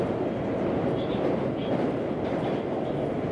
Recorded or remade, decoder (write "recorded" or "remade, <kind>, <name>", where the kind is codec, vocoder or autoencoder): recorded